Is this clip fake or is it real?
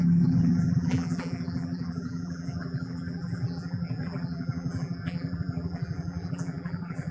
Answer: fake